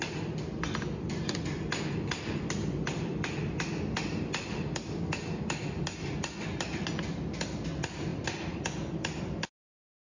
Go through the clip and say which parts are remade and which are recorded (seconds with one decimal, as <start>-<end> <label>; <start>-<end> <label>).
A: 0.0-8.1 recorded; 8.1-8.6 remade; 8.6-10.1 recorded